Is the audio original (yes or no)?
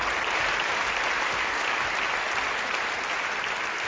yes